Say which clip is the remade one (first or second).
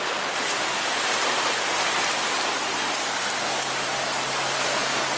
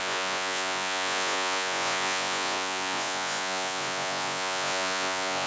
second